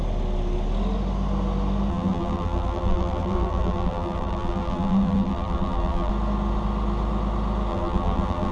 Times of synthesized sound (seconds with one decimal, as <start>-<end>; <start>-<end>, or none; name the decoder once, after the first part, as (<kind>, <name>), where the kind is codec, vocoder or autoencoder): 1.9-6.1 (vocoder, BigVGAN v2); 7.7-8.5